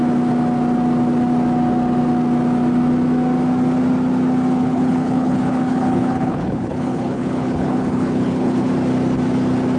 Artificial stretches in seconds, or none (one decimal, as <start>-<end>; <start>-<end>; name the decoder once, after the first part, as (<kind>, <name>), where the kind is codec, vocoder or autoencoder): 4.6-8.7 (codec, HILCodec)